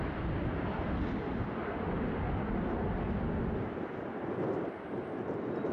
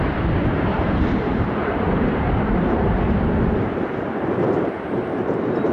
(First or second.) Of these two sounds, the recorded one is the first